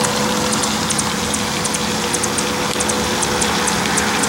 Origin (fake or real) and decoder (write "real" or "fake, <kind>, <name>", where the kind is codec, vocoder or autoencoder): real